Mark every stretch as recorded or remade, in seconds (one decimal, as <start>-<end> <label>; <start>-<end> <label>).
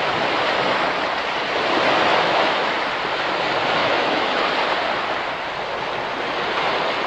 0.0-2.1 recorded; 2.1-2.7 remade; 2.7-3.8 recorded; 3.8-4.4 remade; 4.4-7.1 recorded